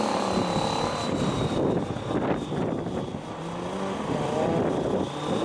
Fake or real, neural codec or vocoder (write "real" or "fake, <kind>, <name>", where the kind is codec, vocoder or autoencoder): real